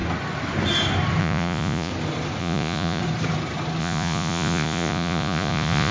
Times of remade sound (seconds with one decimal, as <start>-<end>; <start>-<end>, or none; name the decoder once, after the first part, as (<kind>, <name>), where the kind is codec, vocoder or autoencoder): 1.2-1.9 (vocoder, Vocos); 2.4-3.0; 3.8-5.9